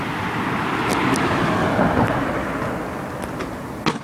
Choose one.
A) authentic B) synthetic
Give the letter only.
A